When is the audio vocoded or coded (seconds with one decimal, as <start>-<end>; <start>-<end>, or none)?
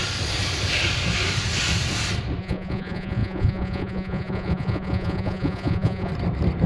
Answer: 2.4-6.1